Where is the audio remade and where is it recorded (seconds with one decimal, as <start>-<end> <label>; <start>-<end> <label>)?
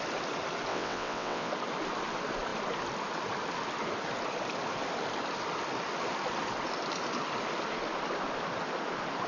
0.0-0.7 recorded; 0.7-1.5 remade; 1.5-9.3 recorded